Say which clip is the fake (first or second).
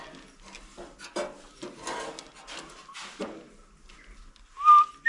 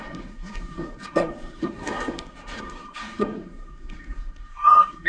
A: second